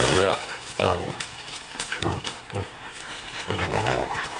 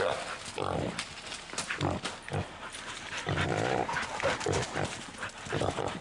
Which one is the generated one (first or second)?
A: first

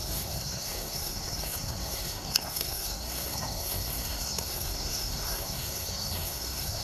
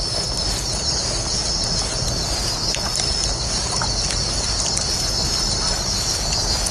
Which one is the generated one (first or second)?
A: first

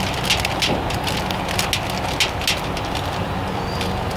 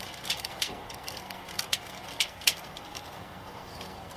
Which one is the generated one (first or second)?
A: second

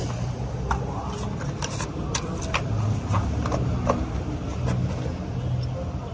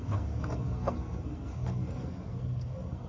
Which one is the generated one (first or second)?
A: second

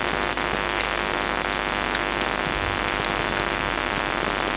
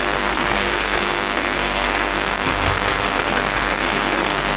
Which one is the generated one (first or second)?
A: second